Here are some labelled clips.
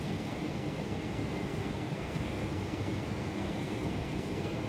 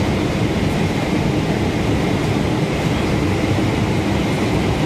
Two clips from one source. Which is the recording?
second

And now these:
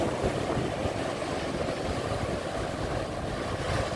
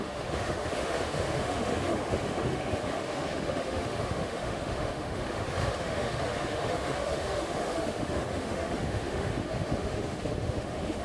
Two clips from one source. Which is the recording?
first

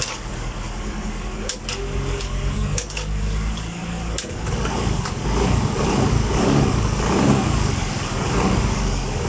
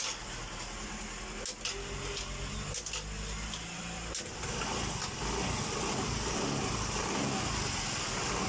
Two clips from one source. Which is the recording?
second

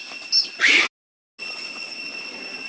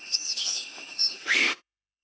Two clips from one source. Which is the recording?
first